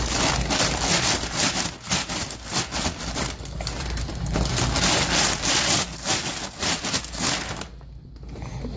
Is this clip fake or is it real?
real